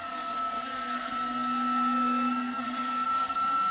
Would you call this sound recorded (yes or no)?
no